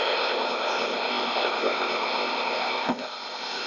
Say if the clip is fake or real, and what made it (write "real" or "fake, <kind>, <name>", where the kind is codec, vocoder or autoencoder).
fake, codec, ZipCodec